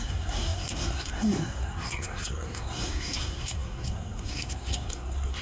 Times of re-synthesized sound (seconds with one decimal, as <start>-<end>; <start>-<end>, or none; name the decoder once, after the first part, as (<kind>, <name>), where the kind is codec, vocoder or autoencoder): 0.0-5.4 (codec, SNAC)